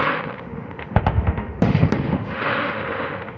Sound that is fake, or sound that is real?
fake